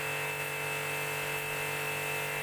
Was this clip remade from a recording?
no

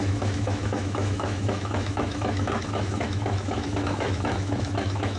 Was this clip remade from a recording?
yes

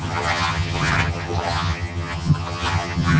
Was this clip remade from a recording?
yes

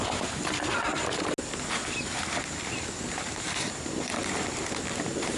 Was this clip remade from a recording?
no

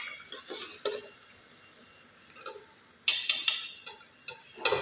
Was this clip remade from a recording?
no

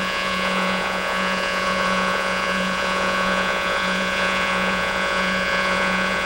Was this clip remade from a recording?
yes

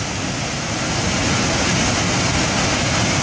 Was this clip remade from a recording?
no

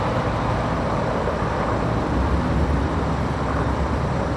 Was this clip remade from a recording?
yes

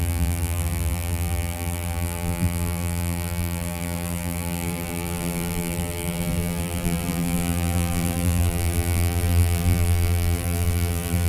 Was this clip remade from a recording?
yes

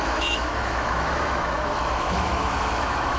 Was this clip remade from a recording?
yes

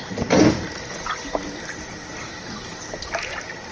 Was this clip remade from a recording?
no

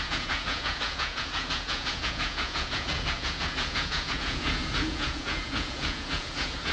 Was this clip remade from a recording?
yes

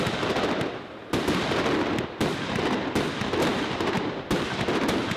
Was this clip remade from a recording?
no